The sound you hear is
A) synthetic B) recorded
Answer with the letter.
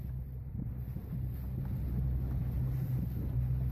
B